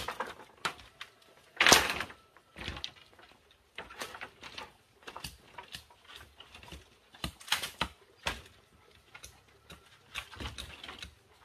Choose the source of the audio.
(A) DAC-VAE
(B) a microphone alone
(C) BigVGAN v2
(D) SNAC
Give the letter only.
B